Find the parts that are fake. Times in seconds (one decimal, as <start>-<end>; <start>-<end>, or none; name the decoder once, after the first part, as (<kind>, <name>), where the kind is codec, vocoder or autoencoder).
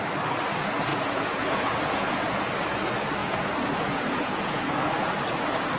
0.9-2.5 (vocoder, Vocos); 3.2-4.6